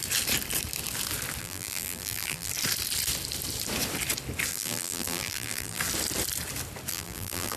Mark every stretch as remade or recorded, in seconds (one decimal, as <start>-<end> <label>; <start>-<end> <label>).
0.0-1.4 recorded; 1.4-2.5 remade; 2.5-4.5 recorded; 4.5-5.8 remade; 5.8-6.9 recorded; 6.9-7.6 remade